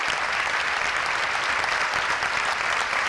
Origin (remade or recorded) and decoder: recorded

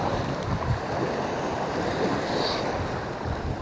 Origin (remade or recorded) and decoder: recorded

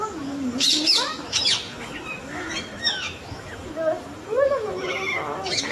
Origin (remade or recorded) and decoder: remade, autoencoder, DAC-VAE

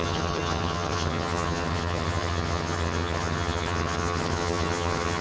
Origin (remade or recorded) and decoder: remade, vocoder, HiFi-GAN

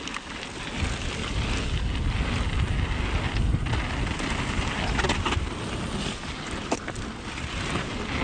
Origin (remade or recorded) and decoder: recorded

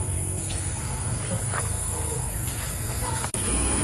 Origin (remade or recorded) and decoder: remade, codec, SNAC